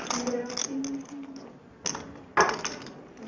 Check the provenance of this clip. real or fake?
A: real